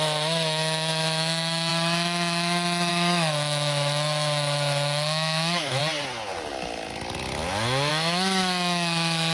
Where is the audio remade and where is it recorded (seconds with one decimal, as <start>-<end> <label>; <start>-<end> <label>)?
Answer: 0.0-5.8 remade; 5.8-7.9 recorded; 7.9-9.3 remade